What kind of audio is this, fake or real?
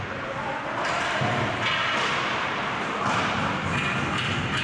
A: real